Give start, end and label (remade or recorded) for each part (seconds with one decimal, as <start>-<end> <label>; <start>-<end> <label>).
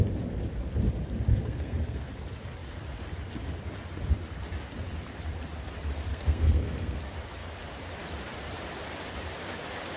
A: 0.0-1.3 recorded; 1.3-2.1 remade; 2.1-6.1 recorded; 6.1-7.0 remade; 7.0-10.0 recorded